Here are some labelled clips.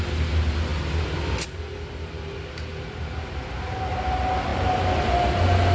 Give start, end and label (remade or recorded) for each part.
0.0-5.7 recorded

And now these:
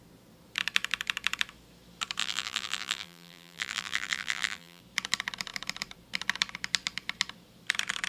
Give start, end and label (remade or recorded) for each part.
0.0-2.2 recorded; 2.2-4.8 remade; 4.8-8.1 recorded

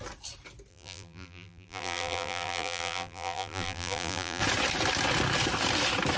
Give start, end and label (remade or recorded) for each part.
0.0-0.7 recorded; 0.7-4.4 remade; 4.4-6.2 recorded